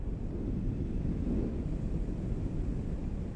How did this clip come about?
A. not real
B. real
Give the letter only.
B